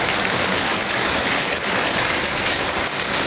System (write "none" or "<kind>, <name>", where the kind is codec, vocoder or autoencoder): codec, DAC